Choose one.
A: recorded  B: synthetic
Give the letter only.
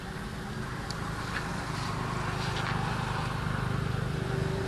A